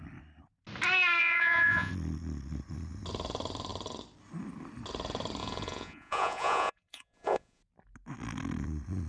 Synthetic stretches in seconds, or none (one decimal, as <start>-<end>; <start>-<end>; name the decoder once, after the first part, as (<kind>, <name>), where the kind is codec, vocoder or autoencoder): 1.2-1.9 (vocoder, Vocos); 5.4-7.6

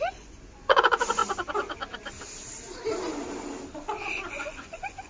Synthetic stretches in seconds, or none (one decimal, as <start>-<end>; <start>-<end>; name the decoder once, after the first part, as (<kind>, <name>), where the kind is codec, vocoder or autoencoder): 0.0-1.2 (vocoder, Vocos); 4.3-5.1

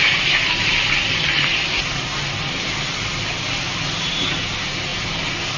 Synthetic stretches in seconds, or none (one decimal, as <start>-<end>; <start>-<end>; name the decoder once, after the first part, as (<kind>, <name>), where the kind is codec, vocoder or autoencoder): none